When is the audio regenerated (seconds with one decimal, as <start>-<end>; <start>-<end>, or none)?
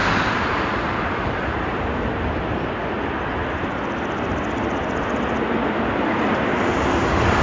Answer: 0.0-2.7